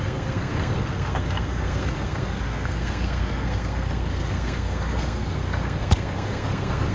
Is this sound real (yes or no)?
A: no